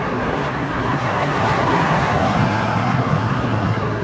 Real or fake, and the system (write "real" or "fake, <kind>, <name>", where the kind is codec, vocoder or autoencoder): fake, codec, SNAC